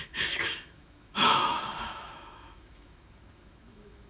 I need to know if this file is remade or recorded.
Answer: remade